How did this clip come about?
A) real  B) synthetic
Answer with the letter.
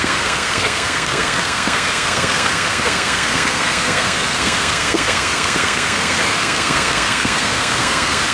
B